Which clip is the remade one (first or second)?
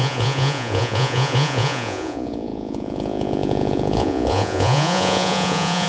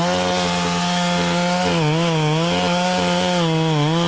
first